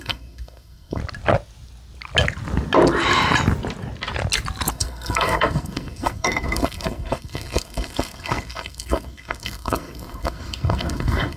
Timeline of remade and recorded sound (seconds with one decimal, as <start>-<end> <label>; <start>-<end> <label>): 0.0-1.0 remade; 1.0-4.7 recorded; 4.7-11.4 remade